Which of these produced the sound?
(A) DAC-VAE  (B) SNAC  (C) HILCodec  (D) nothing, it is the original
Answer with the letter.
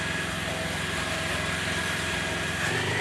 D